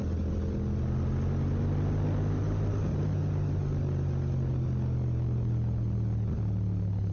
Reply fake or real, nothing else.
real